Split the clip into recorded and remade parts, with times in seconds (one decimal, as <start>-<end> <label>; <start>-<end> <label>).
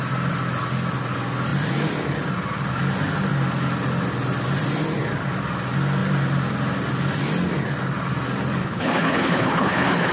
0.0-8.6 recorded; 8.6-10.1 remade